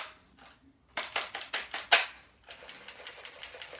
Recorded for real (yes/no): yes